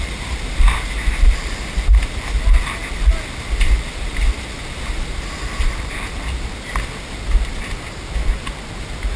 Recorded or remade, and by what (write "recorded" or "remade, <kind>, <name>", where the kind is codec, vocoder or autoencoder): recorded